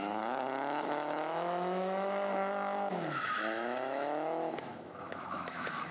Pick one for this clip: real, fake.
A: fake